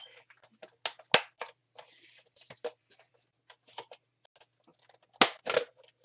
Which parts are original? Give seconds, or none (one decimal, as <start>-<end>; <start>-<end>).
0.0-1.6; 3.1-6.0